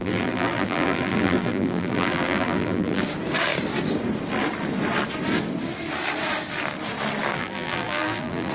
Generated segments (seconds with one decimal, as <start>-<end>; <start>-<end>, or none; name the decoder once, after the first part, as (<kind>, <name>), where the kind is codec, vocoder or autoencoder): 0.0-3.0 (vocoder, BigVGAN v2); 7.3-8.5